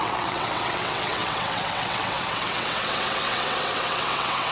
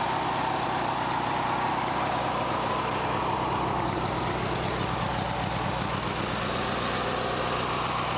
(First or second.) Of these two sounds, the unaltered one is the second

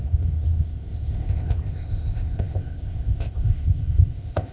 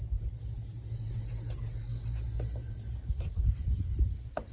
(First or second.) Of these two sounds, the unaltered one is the second